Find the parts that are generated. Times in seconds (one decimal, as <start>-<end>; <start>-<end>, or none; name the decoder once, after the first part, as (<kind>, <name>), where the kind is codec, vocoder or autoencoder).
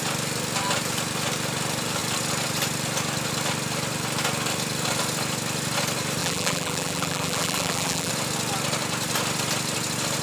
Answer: 6.2-8.1 (vocoder, BigVGAN v2)